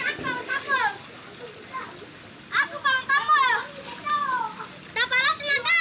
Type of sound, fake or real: real